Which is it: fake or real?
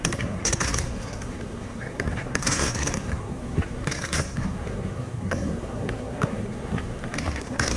fake